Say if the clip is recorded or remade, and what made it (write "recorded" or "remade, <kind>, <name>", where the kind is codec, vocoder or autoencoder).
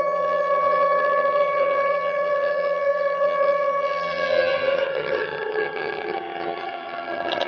remade, vocoder, HiFi-GAN